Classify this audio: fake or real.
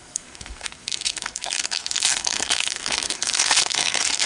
fake